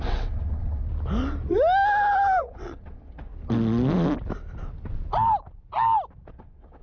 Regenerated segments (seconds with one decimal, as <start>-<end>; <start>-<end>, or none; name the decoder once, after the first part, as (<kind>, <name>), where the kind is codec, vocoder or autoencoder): 0.0-0.8 (vocoder, WaveNeXt); 2.4-3.3; 6.3-6.8